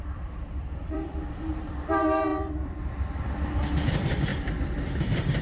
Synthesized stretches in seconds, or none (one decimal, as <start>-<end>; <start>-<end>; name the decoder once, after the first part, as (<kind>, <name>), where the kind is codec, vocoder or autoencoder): 0.0-5.4 (vocoder, BigVGAN v2)